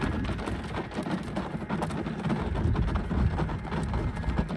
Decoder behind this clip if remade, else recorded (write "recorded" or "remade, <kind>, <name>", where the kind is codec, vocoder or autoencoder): recorded